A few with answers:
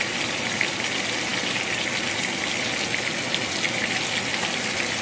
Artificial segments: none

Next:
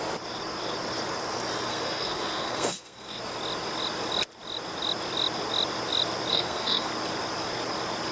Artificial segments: 1.7-3.2 (codec, SNAC); 6.3-6.9

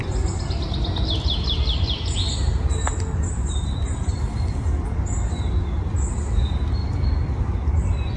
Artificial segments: none